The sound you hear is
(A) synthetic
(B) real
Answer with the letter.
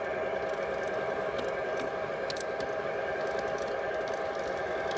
B